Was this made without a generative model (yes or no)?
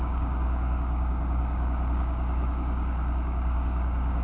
no